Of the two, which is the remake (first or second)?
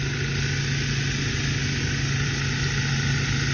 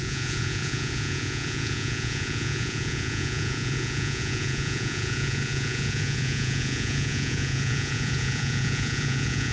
second